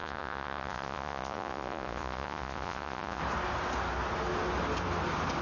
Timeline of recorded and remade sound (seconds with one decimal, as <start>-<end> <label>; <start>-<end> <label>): 0.0-3.2 remade; 3.2-5.4 recorded